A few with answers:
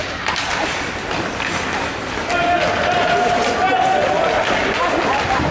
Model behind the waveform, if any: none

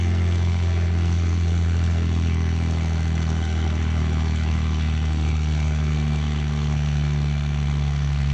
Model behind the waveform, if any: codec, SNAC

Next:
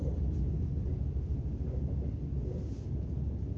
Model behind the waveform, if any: none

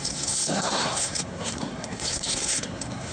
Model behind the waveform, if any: codec, SNAC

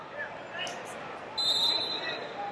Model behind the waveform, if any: none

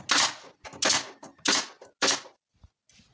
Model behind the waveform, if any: none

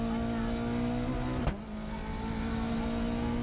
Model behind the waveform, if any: none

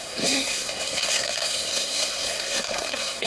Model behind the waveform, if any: codec, SNAC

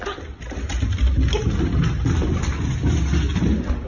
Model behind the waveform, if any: none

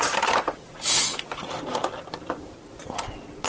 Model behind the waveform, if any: none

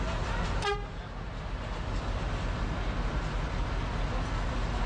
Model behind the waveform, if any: none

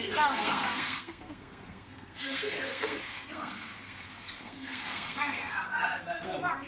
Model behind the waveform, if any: codec, SNAC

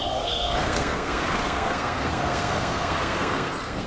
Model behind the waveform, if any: codec, SNAC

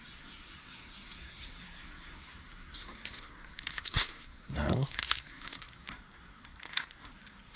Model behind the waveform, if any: codec, SNAC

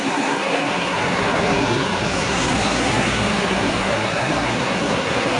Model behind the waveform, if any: codec, SNAC